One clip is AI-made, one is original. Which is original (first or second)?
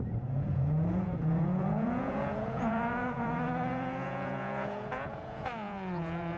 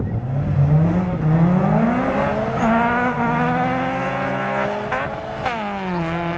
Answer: second